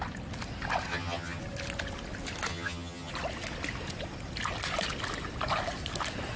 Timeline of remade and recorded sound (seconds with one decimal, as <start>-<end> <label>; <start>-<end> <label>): 0.0-0.9 recorded; 0.9-1.4 remade; 1.4-2.5 recorded; 2.5-3.1 remade; 3.1-6.4 recorded